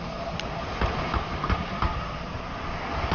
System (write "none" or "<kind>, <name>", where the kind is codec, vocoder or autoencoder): none